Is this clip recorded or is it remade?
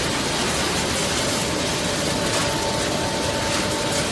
recorded